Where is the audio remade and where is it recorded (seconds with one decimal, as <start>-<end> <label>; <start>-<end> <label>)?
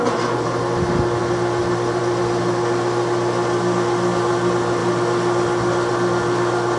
0.0-6.8 recorded